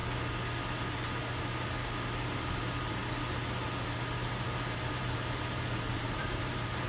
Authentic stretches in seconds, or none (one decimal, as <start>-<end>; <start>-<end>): 0.0-2.6; 3.0-4.9